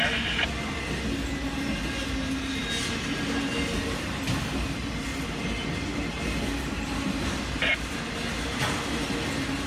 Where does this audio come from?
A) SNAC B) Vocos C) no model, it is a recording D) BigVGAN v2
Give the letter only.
C